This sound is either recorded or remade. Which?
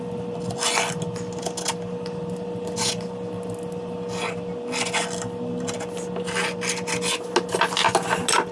recorded